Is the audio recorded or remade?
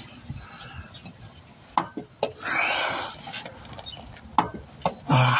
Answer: recorded